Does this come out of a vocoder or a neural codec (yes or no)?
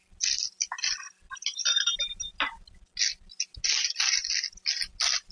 no